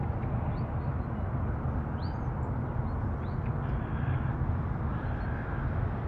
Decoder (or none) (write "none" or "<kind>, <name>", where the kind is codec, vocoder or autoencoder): none